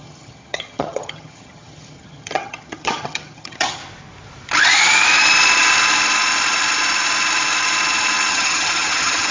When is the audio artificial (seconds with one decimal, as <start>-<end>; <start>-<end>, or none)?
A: 0.0-3.8; 8.3-9.3